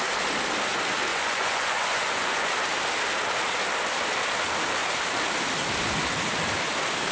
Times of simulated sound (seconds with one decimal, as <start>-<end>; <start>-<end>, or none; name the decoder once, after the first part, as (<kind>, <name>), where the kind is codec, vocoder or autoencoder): 1.1-2.5 (vocoder, Vocos)